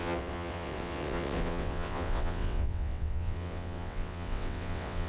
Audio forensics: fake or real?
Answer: fake